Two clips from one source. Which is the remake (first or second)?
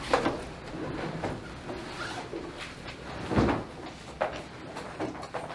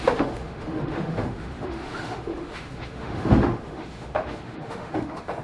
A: second